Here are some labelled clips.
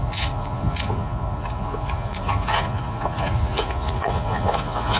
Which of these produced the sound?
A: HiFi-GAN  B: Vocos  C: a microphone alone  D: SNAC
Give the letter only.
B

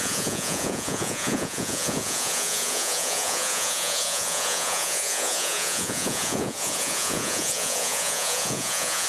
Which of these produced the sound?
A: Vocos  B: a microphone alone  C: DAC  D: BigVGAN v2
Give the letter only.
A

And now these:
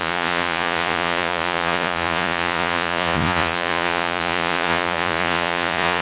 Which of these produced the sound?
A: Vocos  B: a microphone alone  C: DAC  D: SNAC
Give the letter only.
A